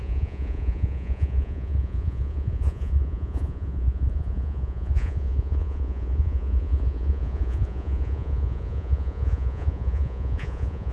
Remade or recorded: remade